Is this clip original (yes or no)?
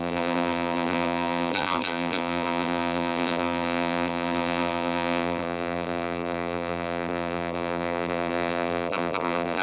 no